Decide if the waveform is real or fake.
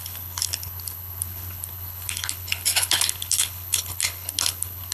fake